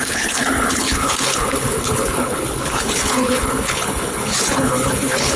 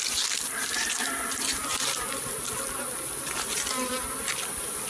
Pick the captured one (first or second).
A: second